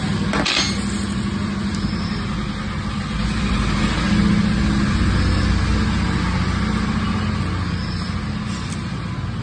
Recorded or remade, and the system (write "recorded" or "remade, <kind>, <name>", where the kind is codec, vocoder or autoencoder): recorded